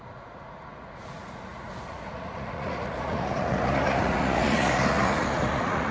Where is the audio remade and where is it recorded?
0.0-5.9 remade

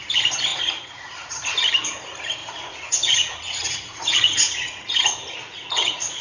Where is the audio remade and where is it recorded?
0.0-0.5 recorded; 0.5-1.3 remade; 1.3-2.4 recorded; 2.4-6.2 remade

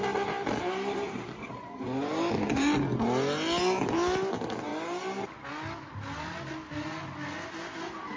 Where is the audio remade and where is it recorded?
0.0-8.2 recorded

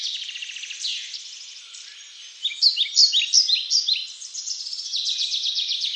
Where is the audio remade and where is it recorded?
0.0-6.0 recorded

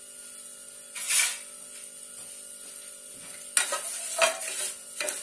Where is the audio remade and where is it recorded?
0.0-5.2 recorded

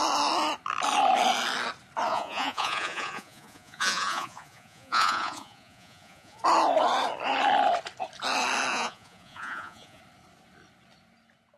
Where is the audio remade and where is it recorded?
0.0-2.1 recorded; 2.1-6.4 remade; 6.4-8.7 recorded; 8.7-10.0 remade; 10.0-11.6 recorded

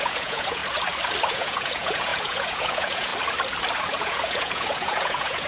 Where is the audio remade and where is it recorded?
0.0-0.6 remade; 0.6-1.3 recorded; 1.3-3.1 remade; 3.1-3.9 recorded; 3.9-5.5 remade

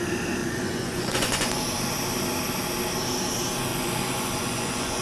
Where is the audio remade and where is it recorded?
0.0-0.4 recorded; 0.4-1.6 remade; 1.6-3.7 recorded; 3.7-5.0 remade